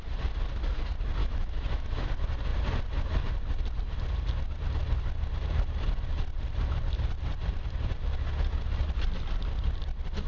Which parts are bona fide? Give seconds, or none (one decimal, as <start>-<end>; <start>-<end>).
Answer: 0.0-1.2; 2.1-10.3